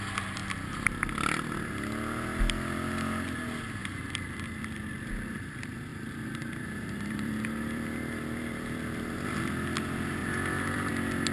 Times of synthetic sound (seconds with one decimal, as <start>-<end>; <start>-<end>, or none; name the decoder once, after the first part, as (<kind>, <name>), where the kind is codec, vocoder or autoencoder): 3.8-4.6 (vocoder, BigVGAN v2); 5.9-9.0; 10.2-10.9